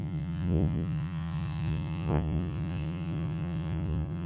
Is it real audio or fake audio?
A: fake